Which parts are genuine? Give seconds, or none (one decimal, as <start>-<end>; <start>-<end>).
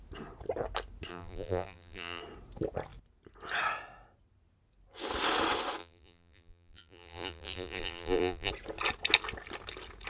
0.0-1.1; 2.2-5.8; 8.5-10.1